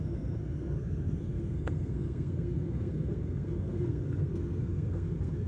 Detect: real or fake fake